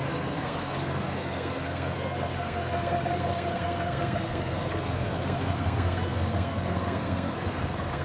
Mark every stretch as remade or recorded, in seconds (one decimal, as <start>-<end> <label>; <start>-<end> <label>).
0.0-8.0 remade